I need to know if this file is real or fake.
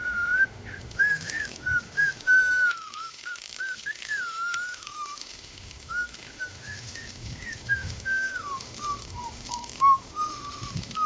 fake